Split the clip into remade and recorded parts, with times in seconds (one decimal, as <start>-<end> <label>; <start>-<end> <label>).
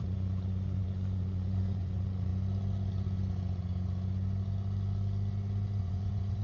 0.0-2.3 remade; 2.3-5.8 recorded; 5.8-6.4 remade